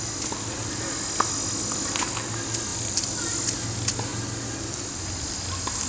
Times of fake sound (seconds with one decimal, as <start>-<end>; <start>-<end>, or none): 2.7-3.3; 4.1-4.6